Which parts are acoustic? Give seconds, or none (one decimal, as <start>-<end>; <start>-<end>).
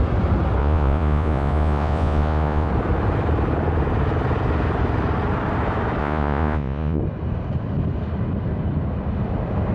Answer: 0.0-0.6; 2.7-6.0; 7.0-9.7